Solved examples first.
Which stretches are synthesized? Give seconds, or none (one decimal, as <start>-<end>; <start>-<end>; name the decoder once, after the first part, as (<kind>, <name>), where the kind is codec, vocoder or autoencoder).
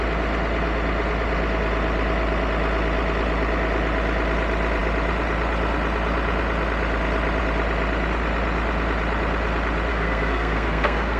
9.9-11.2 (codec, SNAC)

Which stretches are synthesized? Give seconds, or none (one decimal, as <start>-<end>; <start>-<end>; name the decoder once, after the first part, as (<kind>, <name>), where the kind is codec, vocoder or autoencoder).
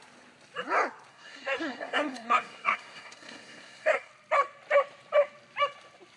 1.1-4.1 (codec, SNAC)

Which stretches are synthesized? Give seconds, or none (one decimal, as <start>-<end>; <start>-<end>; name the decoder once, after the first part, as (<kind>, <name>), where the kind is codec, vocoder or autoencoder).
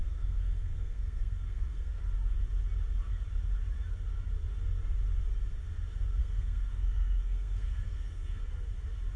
0.0-2.0 (codec, SNAC); 6.2-8.5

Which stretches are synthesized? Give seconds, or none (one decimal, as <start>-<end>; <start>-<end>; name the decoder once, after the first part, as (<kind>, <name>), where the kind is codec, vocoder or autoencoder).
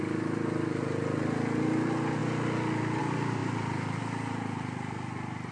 none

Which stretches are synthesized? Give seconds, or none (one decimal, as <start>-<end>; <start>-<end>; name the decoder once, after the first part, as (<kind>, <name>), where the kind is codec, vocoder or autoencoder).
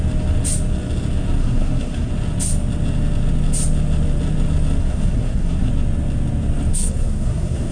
1.4-2.1 (codec, SNAC); 4.8-5.7; 6.7-7.7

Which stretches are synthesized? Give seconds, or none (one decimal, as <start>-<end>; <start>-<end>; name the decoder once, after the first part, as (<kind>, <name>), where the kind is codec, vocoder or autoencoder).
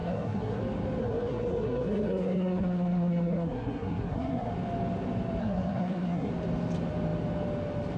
0.0-0.6 (codec, SNAC); 1.0-4.5; 5.4-6.3